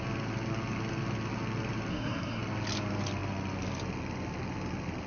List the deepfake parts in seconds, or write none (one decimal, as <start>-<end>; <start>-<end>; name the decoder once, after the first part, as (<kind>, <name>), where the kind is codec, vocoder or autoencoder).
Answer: 1.9-2.4 (codec, SNAC)